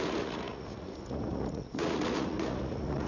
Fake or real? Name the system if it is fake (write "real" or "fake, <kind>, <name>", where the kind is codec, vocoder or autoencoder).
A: fake, vocoder, Vocos